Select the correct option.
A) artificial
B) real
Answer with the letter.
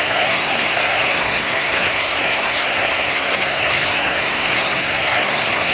A